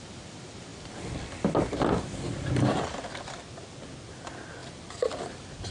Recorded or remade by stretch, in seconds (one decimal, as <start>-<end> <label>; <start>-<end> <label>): 0.0-4.6 recorded; 4.6-5.7 remade